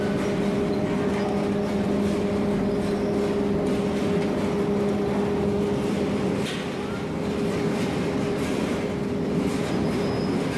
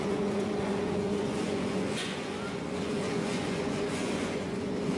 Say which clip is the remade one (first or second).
second